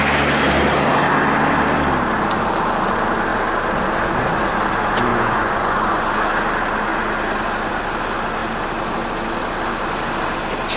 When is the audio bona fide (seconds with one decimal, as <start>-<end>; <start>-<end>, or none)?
0.0-5.1; 6.1-10.8